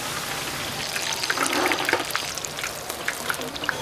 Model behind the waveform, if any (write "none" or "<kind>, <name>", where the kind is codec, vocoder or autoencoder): none